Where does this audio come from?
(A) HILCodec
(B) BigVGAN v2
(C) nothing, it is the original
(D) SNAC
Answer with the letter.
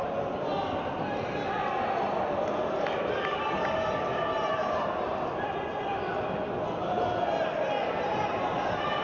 C